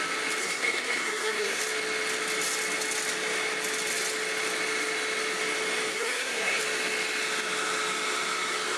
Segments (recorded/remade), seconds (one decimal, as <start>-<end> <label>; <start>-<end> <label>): 0.0-0.4 recorded; 0.4-1.6 remade; 1.6-5.9 recorded; 5.9-6.6 remade; 6.6-8.8 recorded